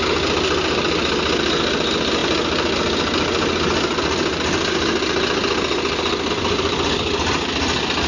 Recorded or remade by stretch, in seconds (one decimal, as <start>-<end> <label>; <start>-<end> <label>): 0.0-8.1 recorded